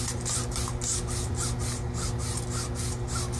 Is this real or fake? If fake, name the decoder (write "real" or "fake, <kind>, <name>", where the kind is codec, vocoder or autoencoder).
real